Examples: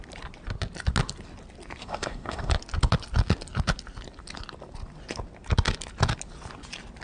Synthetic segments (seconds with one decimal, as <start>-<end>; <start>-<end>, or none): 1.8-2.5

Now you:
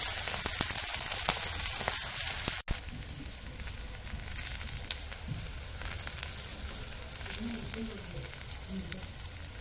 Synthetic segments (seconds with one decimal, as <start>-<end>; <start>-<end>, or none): none

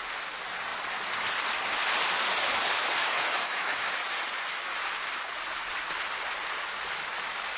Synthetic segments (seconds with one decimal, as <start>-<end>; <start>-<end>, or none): 3.0-3.9